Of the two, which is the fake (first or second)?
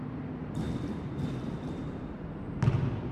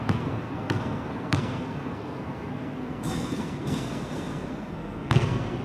second